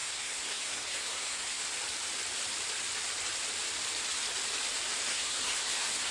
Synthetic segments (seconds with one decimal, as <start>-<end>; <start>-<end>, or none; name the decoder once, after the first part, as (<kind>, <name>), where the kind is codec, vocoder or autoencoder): 0.0-1.6 (codec, SNAC); 5.1-6.1